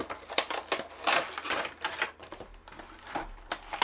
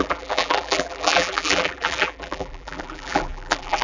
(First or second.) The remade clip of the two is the second